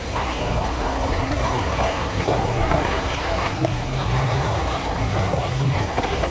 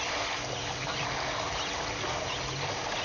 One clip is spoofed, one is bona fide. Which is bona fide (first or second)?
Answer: second